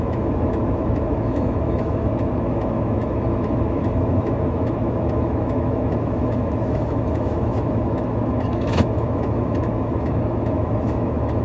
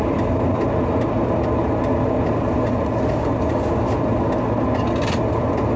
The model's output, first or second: first